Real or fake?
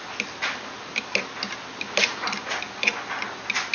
real